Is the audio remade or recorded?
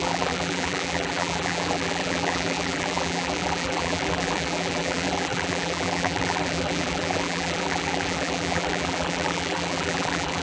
remade